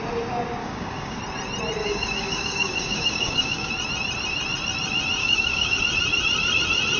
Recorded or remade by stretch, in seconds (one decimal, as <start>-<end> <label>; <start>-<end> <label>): 0.0-0.6 recorded; 0.6-1.2 remade; 1.2-1.8 recorded; 1.8-3.7 remade; 3.7-5.2 recorded; 5.2-5.8 remade; 5.8-7.0 recorded